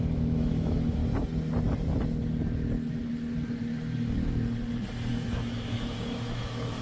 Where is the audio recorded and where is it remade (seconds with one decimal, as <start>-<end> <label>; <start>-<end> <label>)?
0.0-1.0 remade; 1.0-5.1 recorded; 5.1-6.8 remade